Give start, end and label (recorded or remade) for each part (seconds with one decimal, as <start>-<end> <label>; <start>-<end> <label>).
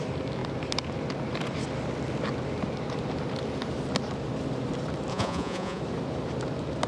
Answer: 0.0-5.1 recorded; 5.1-5.8 remade; 5.8-6.9 recorded